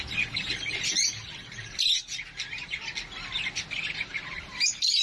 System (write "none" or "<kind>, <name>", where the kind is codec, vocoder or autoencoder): none